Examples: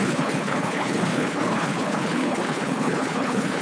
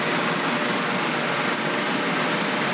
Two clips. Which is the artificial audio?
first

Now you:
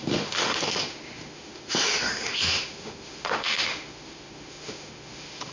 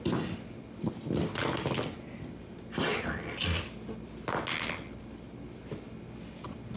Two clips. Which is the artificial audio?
first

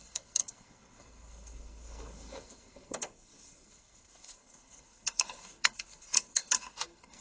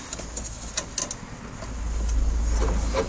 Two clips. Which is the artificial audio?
first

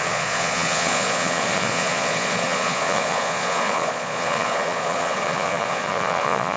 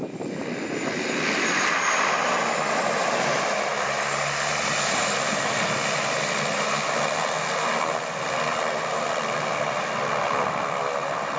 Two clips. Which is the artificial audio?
first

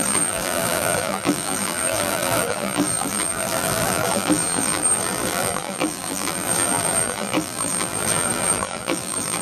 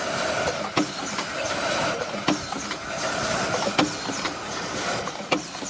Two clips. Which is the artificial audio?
first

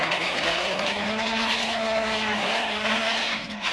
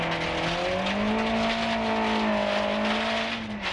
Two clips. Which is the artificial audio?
first